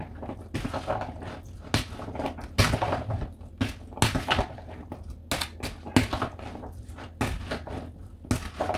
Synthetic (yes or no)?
no